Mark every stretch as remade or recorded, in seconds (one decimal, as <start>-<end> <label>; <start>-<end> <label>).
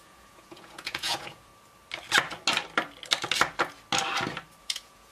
0.0-1.5 remade; 1.5-4.6 recorded; 4.6-5.1 remade